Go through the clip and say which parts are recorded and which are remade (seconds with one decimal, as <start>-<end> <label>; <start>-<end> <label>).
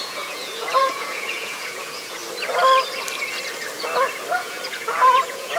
0.0-2.2 remade; 2.2-4.3 recorded; 4.3-5.6 remade